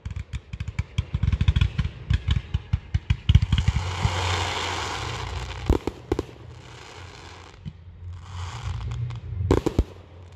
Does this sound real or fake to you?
real